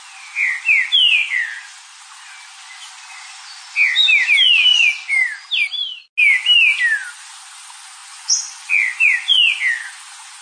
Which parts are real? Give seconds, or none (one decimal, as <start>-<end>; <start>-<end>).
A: 0.0-1.2; 2.0-8.0; 9.5-10.4